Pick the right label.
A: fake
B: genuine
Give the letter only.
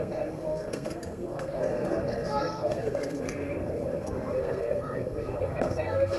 A